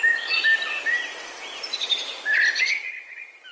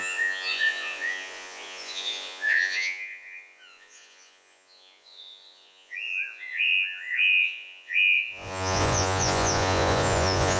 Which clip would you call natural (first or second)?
first